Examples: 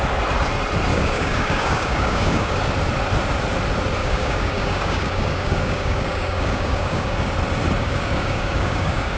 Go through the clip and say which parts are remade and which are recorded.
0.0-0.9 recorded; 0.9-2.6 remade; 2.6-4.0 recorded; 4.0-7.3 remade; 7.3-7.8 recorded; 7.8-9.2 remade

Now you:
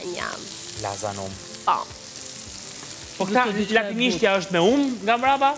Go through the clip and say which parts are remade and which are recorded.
0.0-5.6 recorded

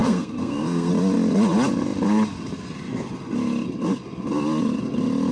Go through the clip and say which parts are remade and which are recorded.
0.0-0.9 remade; 0.9-5.3 recorded

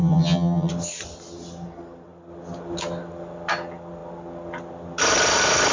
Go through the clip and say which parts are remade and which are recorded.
0.0-0.7 remade; 0.7-5.7 recorded

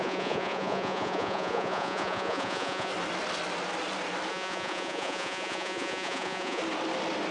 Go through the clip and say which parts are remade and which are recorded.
0.0-2.9 remade; 2.9-4.3 recorded; 4.3-6.6 remade; 6.6-7.3 recorded

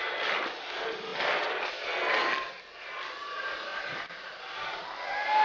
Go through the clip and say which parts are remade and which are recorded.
0.0-3.7 recorded; 3.7-4.4 remade; 4.4-5.4 recorded